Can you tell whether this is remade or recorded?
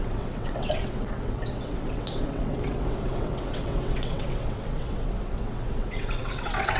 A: remade